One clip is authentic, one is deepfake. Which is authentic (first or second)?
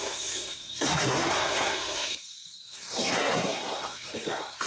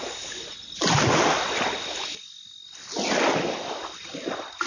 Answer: second